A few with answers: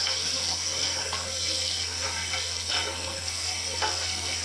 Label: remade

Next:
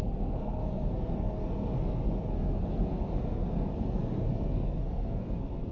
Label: remade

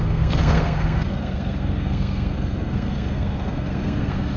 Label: remade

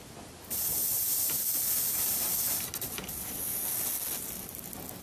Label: recorded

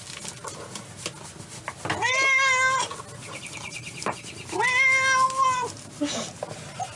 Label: recorded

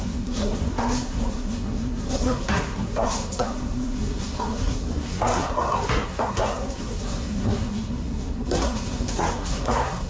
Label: remade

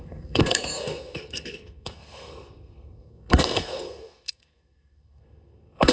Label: remade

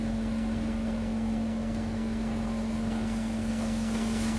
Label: remade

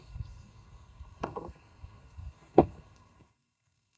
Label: remade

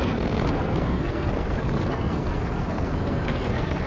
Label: remade